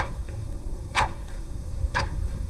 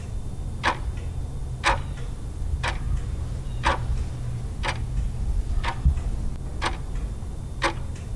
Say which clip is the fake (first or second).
first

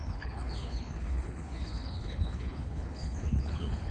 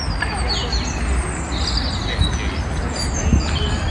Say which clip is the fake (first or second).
first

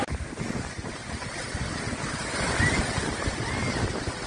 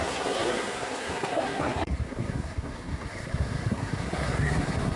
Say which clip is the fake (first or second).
second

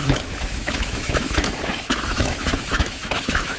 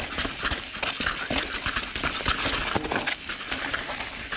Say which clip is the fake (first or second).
first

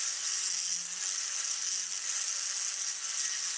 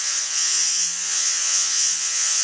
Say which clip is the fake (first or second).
second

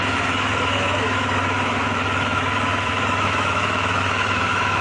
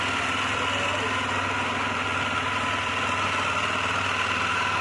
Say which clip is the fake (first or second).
first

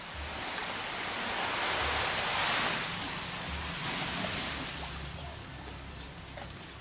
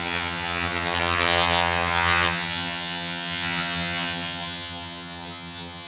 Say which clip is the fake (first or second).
second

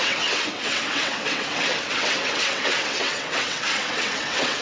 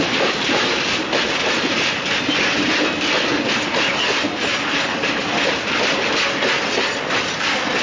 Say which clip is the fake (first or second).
first